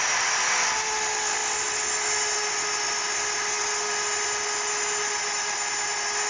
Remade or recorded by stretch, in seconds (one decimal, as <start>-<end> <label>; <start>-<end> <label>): 0.0-6.3 recorded